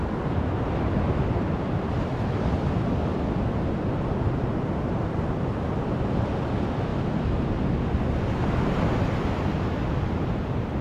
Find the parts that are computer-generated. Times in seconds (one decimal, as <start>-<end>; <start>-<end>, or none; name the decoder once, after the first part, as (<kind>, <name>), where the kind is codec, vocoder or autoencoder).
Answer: none